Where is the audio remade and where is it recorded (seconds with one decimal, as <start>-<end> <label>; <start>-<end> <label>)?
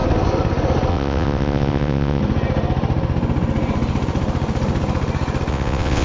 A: 0.0-0.9 recorded; 0.9-2.2 remade; 2.2-5.5 recorded; 5.5-6.0 remade